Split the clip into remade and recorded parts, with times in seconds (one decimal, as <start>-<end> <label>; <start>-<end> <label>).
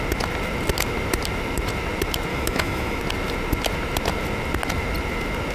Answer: 0.0-2.3 recorded; 2.3-3.0 remade; 3.0-5.5 recorded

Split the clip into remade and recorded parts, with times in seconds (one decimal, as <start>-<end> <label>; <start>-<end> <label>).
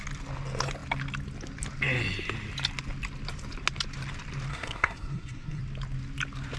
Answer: 0.0-4.5 recorded; 4.5-5.6 remade; 5.6-6.6 recorded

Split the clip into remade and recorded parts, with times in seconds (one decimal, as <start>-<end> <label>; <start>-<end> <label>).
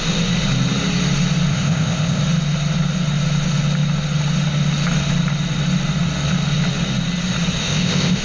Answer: 0.0-1.5 recorded; 1.5-2.2 remade; 2.2-7.6 recorded; 7.6-8.2 remade